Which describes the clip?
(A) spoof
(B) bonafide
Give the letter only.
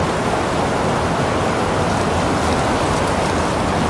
B